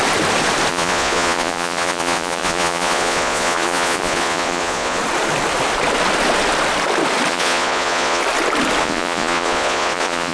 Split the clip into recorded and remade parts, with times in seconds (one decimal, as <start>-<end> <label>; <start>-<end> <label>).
0.0-0.7 recorded; 0.7-5.0 remade; 5.0-7.3 recorded; 7.3-8.2 remade; 8.2-8.8 recorded; 8.8-10.3 remade